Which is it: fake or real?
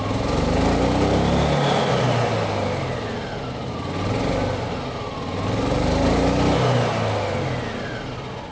real